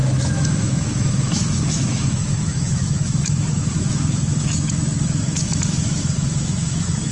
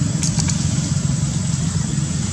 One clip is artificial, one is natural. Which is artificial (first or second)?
first